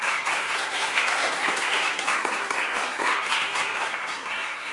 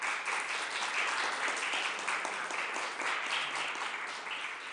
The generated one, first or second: first